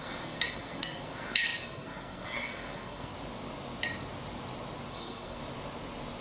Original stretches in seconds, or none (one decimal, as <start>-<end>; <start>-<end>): 3.1-4.9; 5.4-6.2